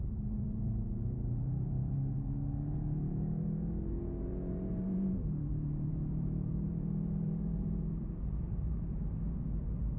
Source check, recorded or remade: remade